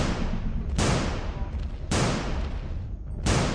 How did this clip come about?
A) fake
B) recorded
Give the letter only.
B